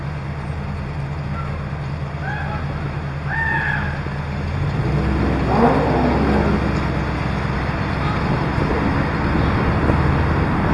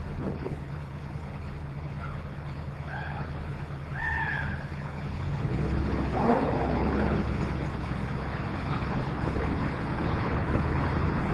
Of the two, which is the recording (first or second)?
first